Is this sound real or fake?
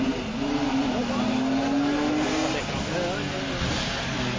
real